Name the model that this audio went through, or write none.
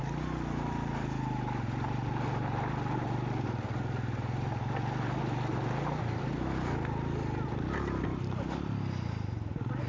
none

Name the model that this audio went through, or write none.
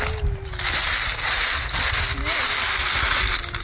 none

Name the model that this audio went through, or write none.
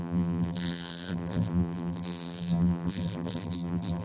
vocoder, BigVGAN v2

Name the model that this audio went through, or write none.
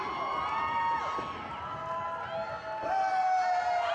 none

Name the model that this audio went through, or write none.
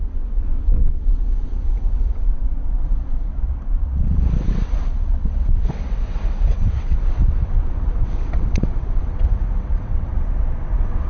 vocoder, WaveNeXt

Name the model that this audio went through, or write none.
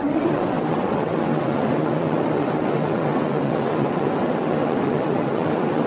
vocoder, WaveNeXt